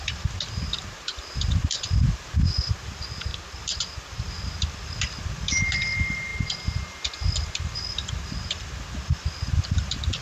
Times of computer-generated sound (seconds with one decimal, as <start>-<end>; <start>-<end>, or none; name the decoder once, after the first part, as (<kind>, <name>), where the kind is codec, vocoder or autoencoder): none